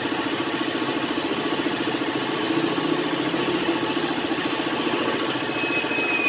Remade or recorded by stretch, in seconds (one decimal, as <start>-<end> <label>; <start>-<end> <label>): 0.0-6.3 recorded